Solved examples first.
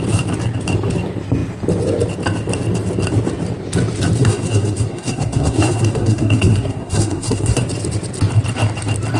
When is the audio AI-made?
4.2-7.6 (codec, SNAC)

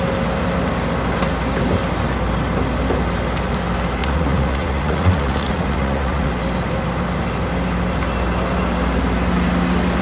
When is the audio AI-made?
4.0-6.3 (vocoder, Vocos)